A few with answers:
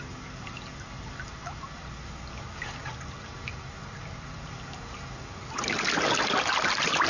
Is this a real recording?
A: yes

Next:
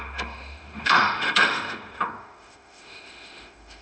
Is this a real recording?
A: no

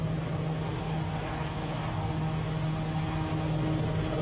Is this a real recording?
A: yes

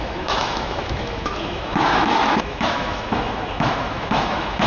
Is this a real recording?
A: no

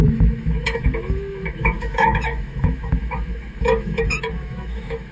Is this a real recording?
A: no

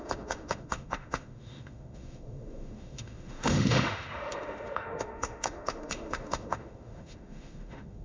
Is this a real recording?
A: no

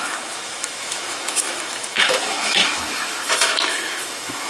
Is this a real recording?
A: no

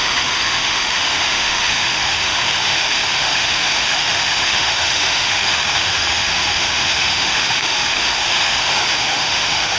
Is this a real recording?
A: no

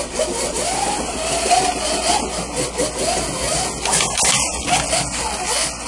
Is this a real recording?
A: yes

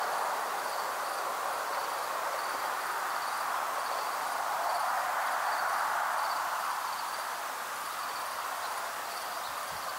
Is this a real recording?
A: yes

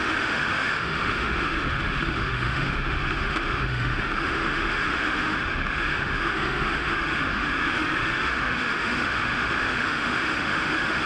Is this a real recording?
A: no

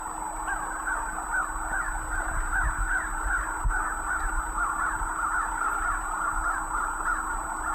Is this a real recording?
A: yes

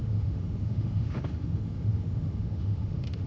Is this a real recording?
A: no